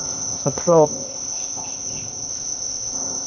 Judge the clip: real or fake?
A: fake